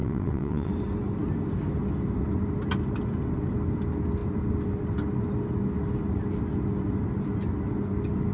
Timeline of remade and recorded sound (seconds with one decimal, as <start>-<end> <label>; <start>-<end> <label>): 0.0-0.7 remade; 0.7-8.3 recorded